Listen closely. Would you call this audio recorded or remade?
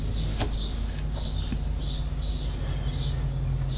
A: recorded